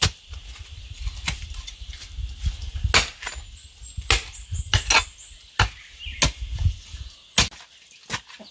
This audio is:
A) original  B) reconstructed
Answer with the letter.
A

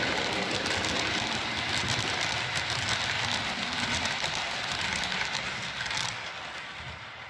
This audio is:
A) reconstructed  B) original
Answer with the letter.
B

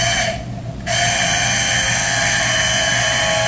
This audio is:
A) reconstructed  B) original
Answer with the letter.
B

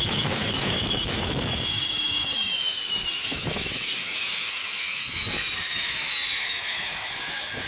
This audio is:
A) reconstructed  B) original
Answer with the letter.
A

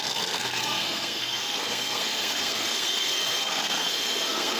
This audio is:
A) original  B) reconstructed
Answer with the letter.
B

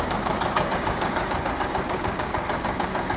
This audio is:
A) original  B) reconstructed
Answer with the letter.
B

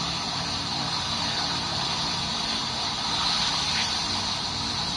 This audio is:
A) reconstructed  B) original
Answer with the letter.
B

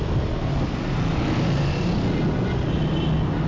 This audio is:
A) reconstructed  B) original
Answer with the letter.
B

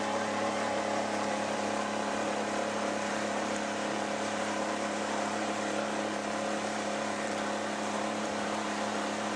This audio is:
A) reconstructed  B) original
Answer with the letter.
A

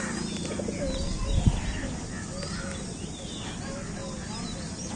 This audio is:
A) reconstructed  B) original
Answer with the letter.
B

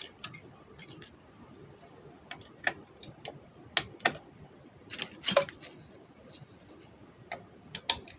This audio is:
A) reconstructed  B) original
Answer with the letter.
B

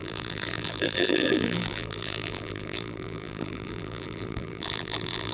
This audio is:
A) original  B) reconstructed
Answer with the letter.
B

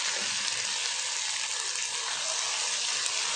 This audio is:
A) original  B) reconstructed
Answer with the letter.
A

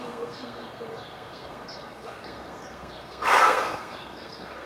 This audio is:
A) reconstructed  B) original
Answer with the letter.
A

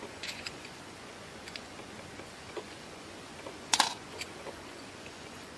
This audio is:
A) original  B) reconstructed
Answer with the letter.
B